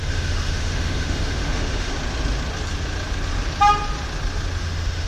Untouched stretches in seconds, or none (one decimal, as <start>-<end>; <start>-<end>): 1.9-4.6